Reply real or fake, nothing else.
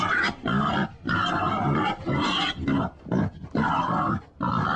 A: real